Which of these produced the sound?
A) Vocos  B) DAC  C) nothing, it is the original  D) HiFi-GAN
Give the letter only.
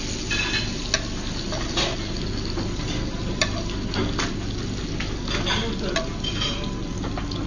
C